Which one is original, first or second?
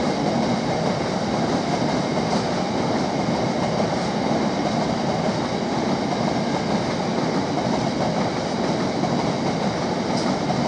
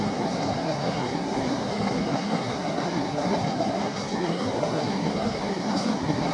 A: first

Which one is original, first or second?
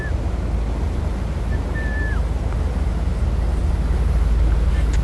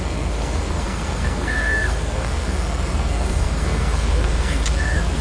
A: first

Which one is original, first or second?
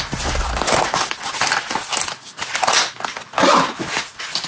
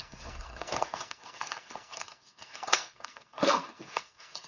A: first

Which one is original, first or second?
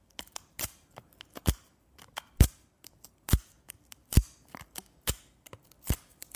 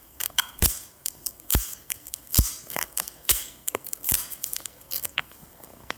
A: first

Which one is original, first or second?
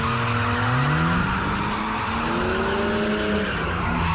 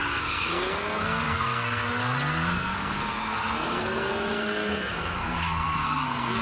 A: first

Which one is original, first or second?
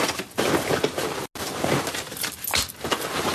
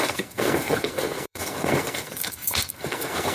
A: first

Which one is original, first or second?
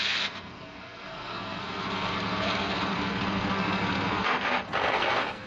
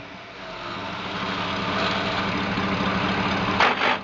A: second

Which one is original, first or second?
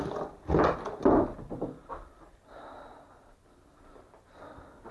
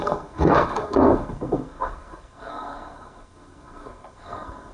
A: first